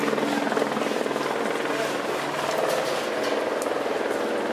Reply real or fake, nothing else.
real